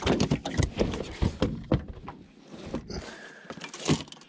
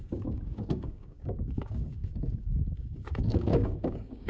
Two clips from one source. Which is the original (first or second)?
first